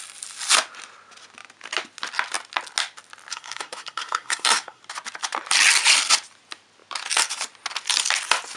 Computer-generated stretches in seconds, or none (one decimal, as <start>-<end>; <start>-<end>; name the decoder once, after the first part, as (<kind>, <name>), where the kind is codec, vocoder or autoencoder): 3.3-4.8 (codec, SNAC)